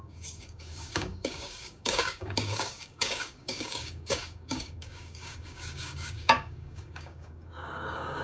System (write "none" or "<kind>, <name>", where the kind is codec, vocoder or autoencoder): codec, DAC